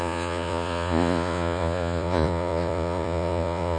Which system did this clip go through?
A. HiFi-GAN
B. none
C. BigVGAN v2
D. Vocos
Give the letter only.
D